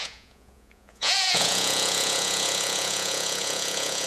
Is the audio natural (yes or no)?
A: no